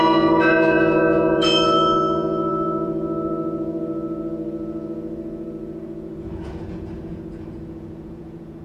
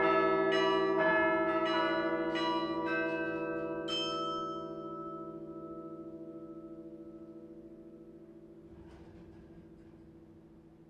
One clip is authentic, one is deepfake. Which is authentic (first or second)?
second